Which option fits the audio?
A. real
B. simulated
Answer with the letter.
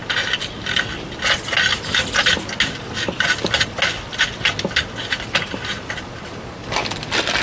A